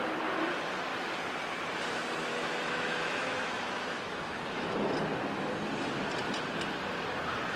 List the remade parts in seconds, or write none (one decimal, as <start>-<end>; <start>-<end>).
2.3-4.9